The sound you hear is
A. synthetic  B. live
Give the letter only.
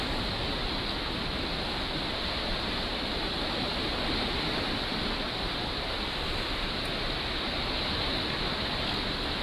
B